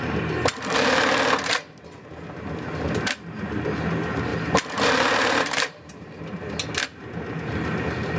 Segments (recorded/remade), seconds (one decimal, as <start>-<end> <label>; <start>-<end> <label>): 0.0-4.3 recorded; 4.3-6.2 remade; 6.2-8.2 recorded